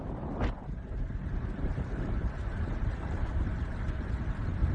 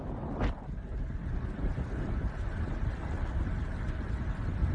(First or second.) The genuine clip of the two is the second